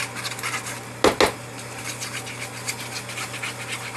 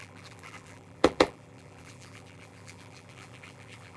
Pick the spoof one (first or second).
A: second